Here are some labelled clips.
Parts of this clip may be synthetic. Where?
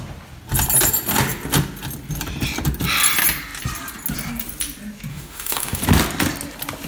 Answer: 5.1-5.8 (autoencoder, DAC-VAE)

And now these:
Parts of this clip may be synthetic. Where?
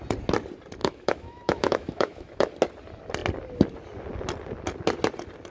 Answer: 0.8-2.5 (autoencoder, DAC-VAE)